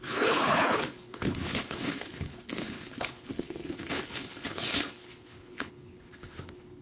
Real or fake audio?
fake